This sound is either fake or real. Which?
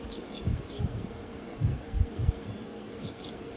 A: fake